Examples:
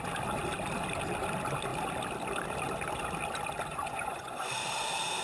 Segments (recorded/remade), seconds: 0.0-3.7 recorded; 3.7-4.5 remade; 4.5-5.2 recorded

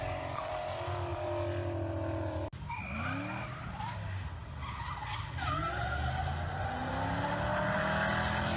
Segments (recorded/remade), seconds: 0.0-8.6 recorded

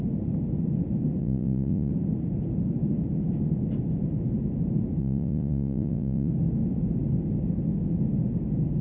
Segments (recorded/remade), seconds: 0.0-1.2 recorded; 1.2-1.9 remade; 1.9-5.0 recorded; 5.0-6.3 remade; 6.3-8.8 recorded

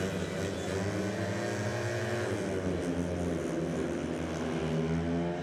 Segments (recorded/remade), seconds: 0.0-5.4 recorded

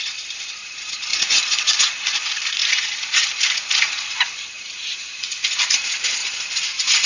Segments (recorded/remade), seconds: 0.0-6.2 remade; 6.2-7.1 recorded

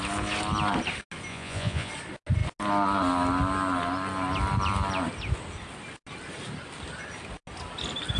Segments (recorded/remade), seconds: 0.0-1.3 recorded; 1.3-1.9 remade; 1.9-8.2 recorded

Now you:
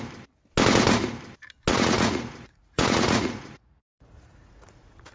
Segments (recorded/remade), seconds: 0.0-1.7 recorded; 1.7-5.1 remade